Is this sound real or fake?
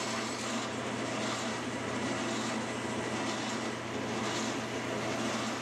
real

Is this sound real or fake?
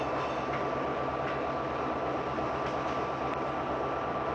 real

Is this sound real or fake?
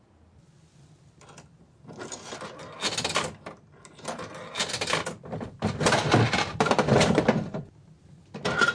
real